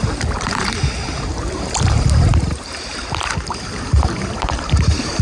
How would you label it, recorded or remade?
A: remade